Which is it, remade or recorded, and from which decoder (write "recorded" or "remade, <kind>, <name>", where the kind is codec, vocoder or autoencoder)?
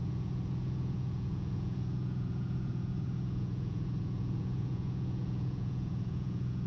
remade, vocoder, Vocos